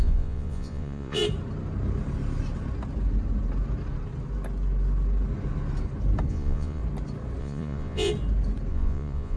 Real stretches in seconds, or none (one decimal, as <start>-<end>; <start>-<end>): 1.2-6.3; 6.8-7.4; 8.1-8.7